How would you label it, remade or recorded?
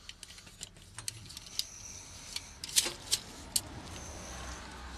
recorded